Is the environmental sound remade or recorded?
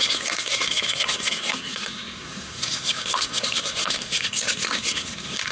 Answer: remade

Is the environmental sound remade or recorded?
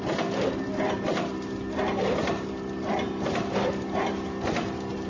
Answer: recorded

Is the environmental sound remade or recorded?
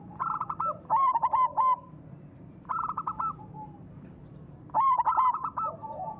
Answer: remade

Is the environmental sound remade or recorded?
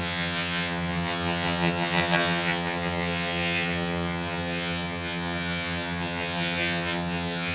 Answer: remade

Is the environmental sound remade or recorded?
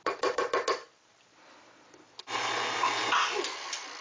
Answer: recorded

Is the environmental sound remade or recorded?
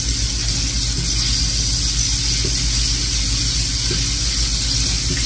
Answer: recorded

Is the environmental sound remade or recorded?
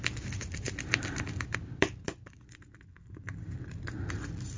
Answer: remade